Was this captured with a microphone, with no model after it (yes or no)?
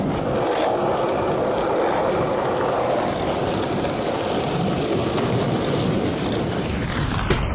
yes